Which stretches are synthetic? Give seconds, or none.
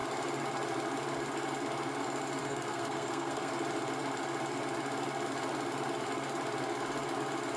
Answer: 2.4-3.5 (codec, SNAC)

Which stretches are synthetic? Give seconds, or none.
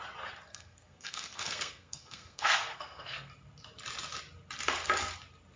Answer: 0.5-3.3 (codec, SNAC)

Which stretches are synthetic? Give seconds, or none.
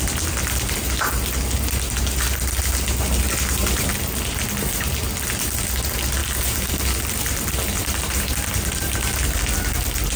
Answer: none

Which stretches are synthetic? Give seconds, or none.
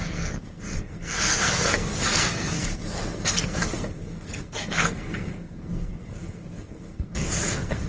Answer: 0.0-7.9 (codec, SNAC)